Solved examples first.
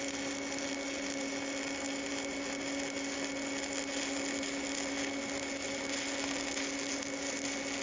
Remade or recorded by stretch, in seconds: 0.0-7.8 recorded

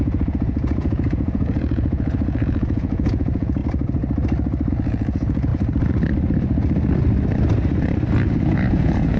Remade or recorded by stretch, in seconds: 0.0-3.6 remade; 3.6-4.7 recorded; 4.7-5.5 remade; 5.5-8.2 recorded; 8.2-9.2 remade

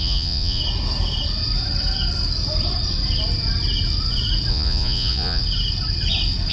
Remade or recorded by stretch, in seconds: 0.0-0.6 remade; 0.6-4.5 recorded; 4.5-5.4 remade; 5.4-6.5 recorded

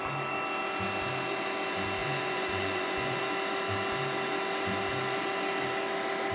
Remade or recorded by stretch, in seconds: 0.0-2.0 recorded; 2.0-3.2 remade; 3.2-6.3 recorded

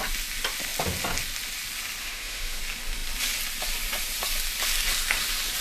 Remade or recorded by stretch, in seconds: 0.0-2.0 recorded; 2.0-2.6 remade; 2.6-5.6 recorded

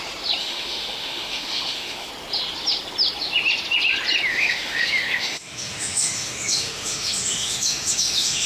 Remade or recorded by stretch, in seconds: 0.0-0.4 recorded; 0.4-2.1 remade; 2.1-4.3 recorded; 4.3-8.5 remade

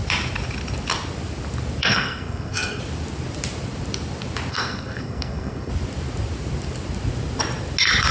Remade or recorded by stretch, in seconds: 0.0-1.8 recorded; 1.8-2.8 remade; 2.8-4.5 recorded; 4.5-5.7 remade; 5.7-8.1 recorded

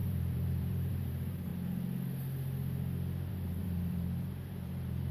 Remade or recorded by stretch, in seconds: 0.0-1.5 remade; 1.5-3.3 recorded; 3.3-5.1 remade